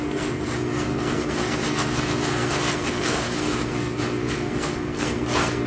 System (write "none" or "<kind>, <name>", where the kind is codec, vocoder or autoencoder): codec, SNAC